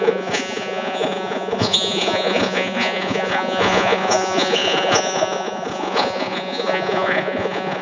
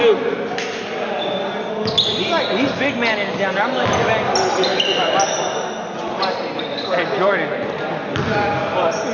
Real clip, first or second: second